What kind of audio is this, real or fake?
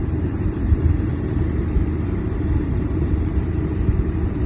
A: fake